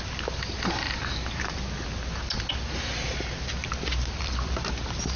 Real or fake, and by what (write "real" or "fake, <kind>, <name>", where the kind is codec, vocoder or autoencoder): real